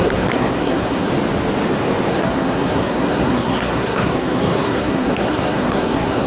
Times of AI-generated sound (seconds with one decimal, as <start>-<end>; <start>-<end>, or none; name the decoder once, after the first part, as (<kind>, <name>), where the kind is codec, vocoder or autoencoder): 0.0-1.1 (codec, SNAC); 2.1-6.3